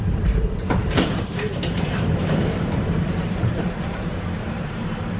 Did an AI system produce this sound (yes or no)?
yes